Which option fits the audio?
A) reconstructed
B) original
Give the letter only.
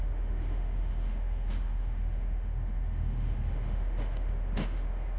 A